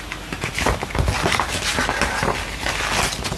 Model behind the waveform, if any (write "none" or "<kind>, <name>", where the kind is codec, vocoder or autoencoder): none